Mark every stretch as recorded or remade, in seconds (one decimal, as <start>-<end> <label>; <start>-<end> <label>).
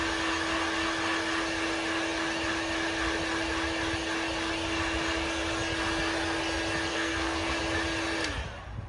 0.0-6.9 recorded; 6.9-7.6 remade; 7.6-8.9 recorded